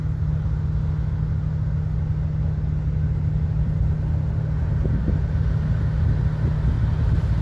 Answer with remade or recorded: recorded